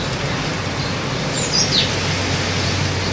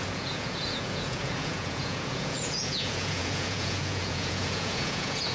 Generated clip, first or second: second